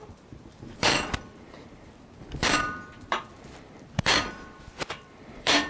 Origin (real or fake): fake